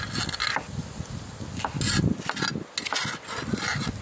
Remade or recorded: recorded